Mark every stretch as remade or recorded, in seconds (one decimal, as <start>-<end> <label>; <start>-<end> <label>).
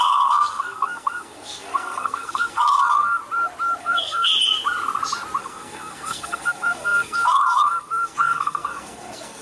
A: 0.0-3.2 remade; 3.2-3.8 recorded; 3.8-4.3 remade; 4.3-5.4 recorded; 5.4-9.4 remade